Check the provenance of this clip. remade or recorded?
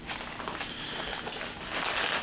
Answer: recorded